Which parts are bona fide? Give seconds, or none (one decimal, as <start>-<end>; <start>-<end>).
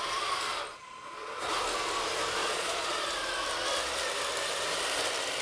0.0-0.7; 1.5-2.4; 3.0-5.4